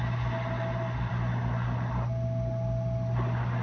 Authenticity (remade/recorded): recorded